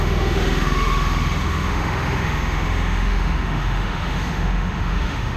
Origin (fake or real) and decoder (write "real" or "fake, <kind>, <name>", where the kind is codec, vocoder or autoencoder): fake, autoencoder, DAC-VAE